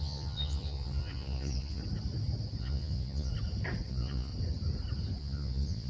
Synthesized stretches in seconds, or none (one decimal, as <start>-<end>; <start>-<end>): 0.0-1.8; 2.6-3.3; 3.9-4.3; 5.2-5.9